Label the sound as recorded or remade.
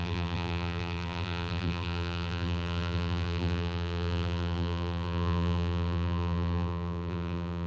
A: remade